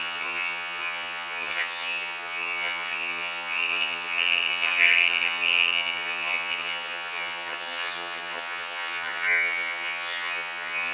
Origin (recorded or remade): remade